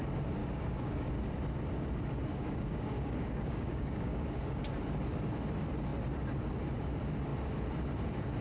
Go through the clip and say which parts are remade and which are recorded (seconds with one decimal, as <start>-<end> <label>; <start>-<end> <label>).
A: 0.0-0.4 recorded; 0.4-1.1 remade; 1.1-2.3 recorded; 2.3-4.6 remade; 4.6-8.4 recorded

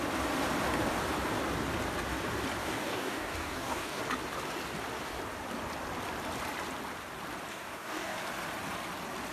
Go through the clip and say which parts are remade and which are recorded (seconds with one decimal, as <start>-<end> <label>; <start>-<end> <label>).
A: 0.0-2.6 recorded; 2.6-4.0 remade; 4.0-7.5 recorded; 7.5-8.2 remade; 8.2-9.3 recorded

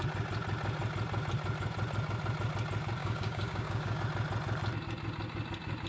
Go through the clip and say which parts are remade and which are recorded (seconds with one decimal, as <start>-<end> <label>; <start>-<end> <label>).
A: 0.0-3.0 recorded; 3.0-4.0 remade; 4.0-5.9 recorded

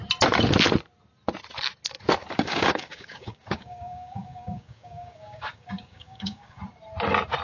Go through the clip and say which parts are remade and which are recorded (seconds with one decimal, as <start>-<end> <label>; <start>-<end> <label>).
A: 0.0-2.2 recorded; 2.2-6.6 remade; 6.6-7.4 recorded

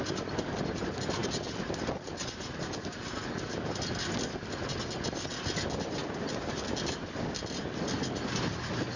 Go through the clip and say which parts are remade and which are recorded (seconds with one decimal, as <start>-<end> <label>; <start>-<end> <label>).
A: 0.0-9.0 recorded

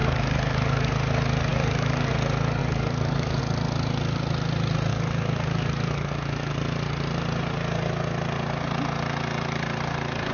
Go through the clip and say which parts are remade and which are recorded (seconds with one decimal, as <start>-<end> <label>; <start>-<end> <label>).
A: 0.0-0.9 remade; 0.9-1.5 recorded; 1.5-2.1 remade; 2.1-2.6 recorded; 2.6-3.4 remade; 3.4-4.9 recorded; 4.9-6.5 remade; 6.5-10.3 recorded

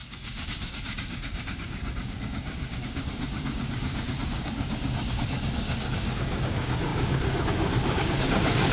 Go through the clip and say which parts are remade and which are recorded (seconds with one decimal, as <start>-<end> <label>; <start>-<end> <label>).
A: 0.0-8.7 remade